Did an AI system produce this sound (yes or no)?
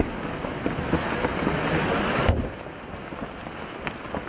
no